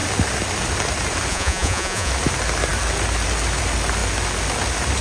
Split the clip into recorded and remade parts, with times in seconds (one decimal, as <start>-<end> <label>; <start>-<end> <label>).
0.0-1.3 recorded; 1.3-2.1 remade; 2.1-5.0 recorded